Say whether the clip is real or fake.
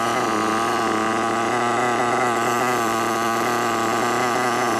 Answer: real